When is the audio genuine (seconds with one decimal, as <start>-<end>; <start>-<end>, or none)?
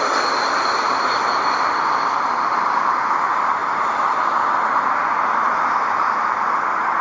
0.0-3.6; 4.5-7.0